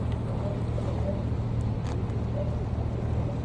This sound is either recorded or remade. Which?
recorded